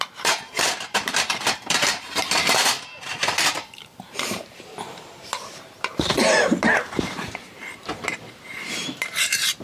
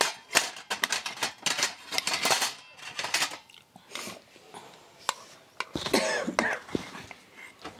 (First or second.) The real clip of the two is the second